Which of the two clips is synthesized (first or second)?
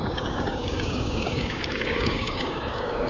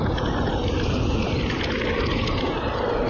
first